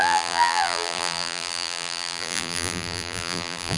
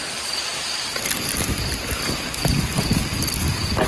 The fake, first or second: first